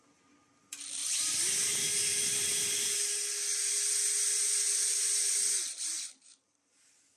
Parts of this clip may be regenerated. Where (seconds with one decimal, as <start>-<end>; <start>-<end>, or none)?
none

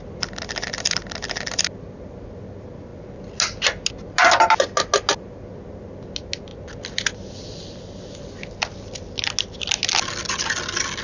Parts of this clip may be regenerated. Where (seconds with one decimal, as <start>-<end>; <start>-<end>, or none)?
none

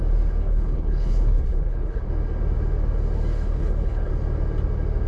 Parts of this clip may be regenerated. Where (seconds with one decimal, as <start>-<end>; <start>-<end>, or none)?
0.4-2.1; 3.3-4.1

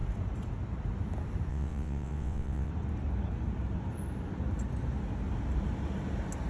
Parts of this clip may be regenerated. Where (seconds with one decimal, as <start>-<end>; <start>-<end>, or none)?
1.5-2.7

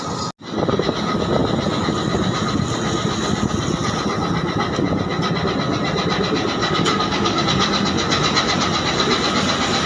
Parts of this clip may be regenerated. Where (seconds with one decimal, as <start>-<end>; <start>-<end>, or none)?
6.6-7.4